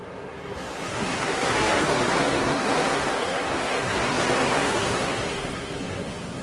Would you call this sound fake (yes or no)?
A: yes